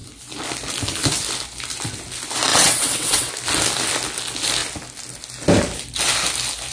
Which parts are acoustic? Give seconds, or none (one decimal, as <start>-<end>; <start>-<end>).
0.0-2.5; 3.3-6.7